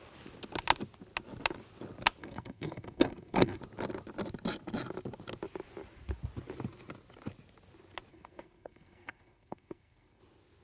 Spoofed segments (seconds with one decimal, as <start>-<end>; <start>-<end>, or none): 2.2-3.6; 8.1-10.2